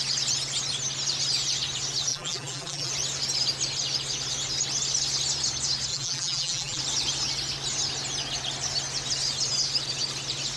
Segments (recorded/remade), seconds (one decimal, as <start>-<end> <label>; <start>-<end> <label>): 0.0-2.1 recorded; 2.1-2.9 remade; 2.9-5.9 recorded; 5.9-6.8 remade; 6.8-10.6 recorded